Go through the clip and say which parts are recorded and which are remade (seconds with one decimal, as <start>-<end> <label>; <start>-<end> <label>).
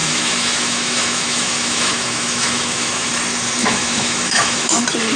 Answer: 0.0-3.1 remade; 3.1-3.6 recorded; 3.6-4.8 remade; 4.8-5.2 recorded